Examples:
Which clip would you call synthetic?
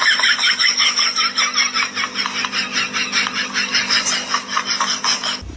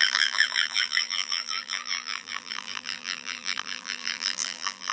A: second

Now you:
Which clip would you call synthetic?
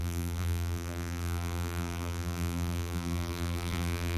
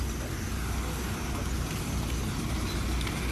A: first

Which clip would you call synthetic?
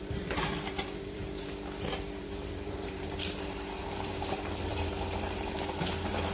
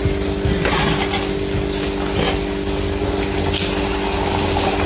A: first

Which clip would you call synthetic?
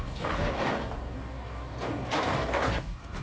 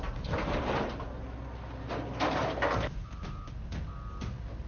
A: first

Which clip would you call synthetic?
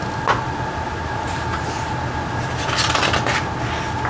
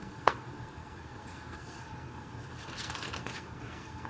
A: second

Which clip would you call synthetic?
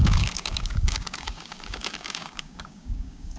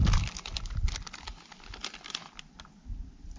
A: first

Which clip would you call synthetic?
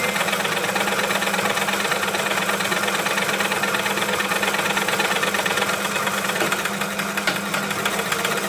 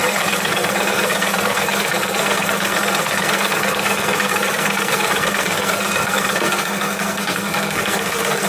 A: second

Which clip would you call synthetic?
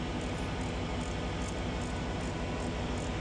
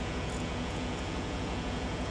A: second